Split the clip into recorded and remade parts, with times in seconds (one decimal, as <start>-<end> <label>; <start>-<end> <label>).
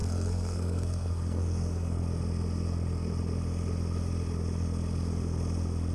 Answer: 0.0-2.0 remade; 2.0-5.9 recorded